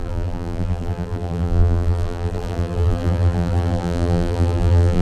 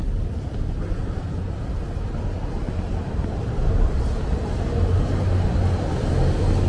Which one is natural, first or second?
second